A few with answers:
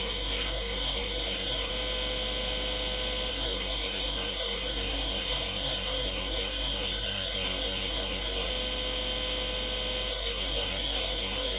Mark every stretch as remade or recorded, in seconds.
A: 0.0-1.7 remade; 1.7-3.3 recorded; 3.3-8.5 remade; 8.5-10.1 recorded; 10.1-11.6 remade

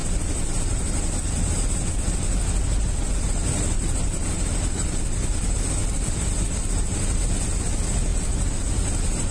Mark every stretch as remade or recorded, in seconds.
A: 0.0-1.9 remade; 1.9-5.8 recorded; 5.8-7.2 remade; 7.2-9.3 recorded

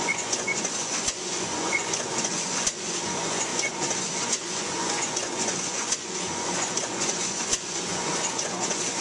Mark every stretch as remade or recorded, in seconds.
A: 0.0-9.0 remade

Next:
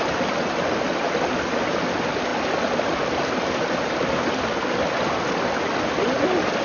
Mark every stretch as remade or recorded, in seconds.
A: 0.0-6.6 recorded

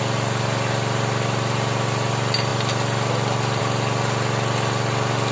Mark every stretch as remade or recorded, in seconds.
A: 0.0-5.3 recorded

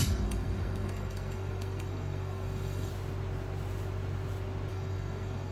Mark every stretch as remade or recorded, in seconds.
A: 0.0-2.9 remade; 2.9-4.7 recorded; 4.7-5.5 remade